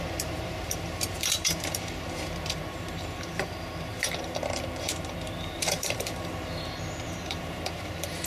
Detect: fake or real fake